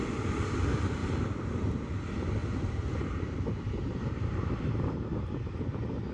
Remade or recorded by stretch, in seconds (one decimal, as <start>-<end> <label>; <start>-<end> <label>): 0.0-1.0 recorded; 1.0-1.6 remade; 1.6-2.4 recorded; 2.4-5.6 remade; 5.6-6.1 recorded